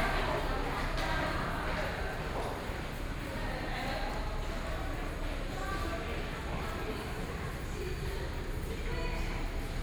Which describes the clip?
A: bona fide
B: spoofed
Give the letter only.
A